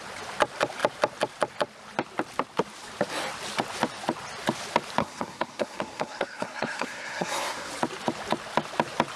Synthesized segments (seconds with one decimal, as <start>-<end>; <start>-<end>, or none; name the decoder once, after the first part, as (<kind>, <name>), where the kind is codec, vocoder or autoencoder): 5.0-7.7 (codec, SNAC)

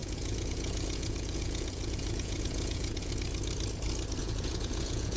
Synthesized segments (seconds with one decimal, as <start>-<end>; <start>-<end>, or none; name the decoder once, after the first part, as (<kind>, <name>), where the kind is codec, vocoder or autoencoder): 0.0-3.1 (vocoder, Vocos); 4.2-5.2

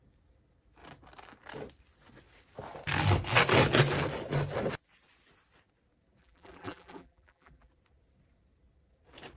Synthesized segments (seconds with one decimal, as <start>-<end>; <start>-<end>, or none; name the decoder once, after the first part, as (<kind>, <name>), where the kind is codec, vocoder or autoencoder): 6.2-7.7 (vocoder, BigVGAN v2)

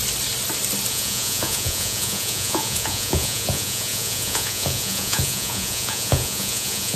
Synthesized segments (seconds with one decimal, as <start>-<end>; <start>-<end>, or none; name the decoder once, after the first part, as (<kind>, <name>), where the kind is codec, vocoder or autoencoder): 0.9-7.0 (vocoder, Vocos)

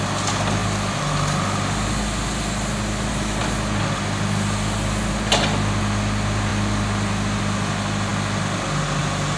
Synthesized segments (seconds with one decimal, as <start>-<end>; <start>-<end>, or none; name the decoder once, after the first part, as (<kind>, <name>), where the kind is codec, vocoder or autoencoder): none